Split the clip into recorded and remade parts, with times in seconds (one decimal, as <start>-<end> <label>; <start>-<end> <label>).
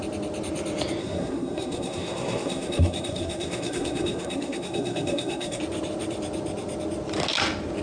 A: 0.0-1.0 recorded; 1.0-5.6 remade; 5.6-7.8 recorded